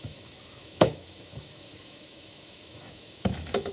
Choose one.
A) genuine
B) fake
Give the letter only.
B